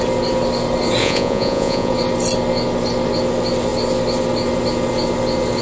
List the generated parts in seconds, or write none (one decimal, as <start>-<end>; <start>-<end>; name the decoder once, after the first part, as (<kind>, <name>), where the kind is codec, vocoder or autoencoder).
1.0-1.9 (vocoder, Vocos)